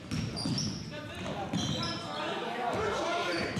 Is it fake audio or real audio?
real